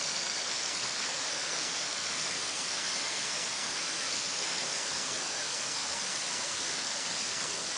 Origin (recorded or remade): remade